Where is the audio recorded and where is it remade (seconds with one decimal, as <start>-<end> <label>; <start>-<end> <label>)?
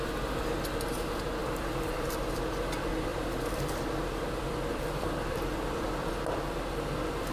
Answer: 0.0-1.4 recorded; 1.4-2.4 remade; 2.4-3.1 recorded; 3.1-6.1 remade; 6.1-7.3 recorded